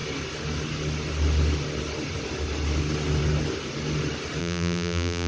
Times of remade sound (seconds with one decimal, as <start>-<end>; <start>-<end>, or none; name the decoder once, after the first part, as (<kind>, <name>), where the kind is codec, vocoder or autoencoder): 4.4-5.3 (vocoder, BigVGAN v2)